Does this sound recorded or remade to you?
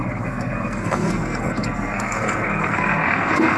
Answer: remade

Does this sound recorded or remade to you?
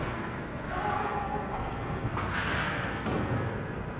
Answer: remade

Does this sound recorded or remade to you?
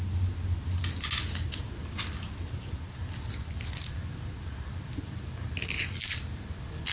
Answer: recorded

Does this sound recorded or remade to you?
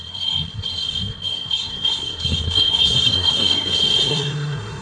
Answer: remade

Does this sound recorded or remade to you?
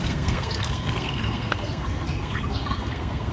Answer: remade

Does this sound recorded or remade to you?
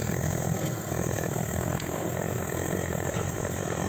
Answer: remade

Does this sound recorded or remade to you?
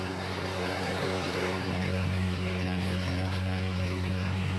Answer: remade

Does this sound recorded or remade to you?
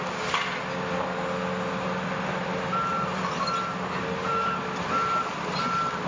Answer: recorded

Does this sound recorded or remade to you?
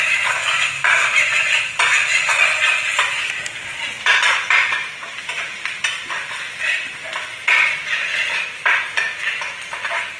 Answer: recorded